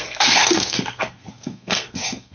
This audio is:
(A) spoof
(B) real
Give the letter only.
A